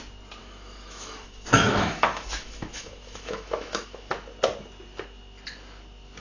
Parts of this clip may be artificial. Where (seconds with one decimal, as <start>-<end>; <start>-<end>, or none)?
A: 0.4-4.1

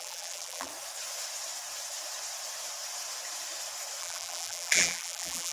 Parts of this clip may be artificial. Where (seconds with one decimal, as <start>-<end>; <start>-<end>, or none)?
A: 0.0-0.7; 4.0-5.5

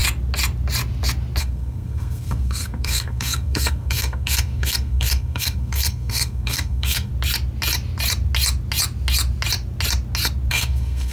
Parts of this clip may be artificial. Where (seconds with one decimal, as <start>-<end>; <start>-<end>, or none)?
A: 1.4-7.1; 10.5-11.1

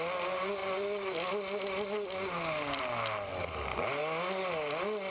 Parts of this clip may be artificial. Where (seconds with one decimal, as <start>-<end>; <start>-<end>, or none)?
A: none

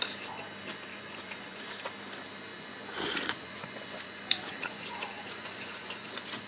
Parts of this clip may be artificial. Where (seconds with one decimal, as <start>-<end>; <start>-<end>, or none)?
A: 0.9-1.6; 2.5-6.5

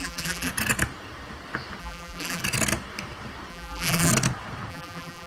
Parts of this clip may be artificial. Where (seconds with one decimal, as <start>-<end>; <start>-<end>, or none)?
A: 0.0-0.5; 1.8-2.4; 3.5-4.1; 4.7-5.3